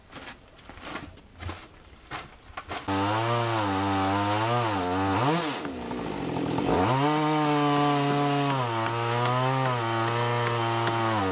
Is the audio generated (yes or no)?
no